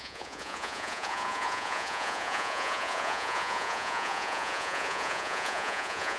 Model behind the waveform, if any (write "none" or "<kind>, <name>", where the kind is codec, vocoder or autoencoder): vocoder, Vocos